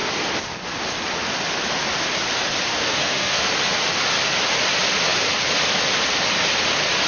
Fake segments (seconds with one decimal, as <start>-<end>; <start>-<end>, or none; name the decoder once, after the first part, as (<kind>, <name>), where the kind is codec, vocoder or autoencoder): 2.7-3.5 (codec, SNAC)